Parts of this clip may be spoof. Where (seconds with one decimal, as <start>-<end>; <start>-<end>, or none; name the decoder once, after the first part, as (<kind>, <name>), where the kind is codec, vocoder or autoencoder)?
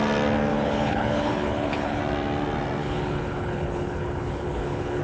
0.5-2.0 (codec, HILCodec); 2.8-5.0